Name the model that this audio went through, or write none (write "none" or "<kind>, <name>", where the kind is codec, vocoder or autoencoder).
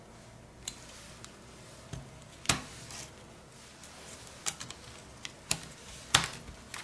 none